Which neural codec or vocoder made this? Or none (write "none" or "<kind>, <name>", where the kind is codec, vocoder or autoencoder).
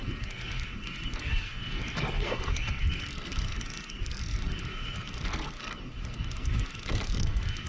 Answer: codec, SNAC